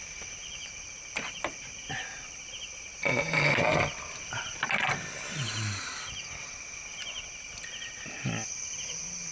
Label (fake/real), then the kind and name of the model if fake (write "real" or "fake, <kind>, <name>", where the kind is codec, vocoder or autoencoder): real